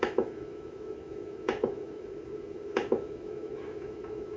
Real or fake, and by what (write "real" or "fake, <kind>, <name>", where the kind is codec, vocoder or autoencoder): fake, autoencoder, DAC-VAE